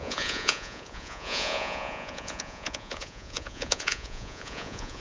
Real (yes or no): no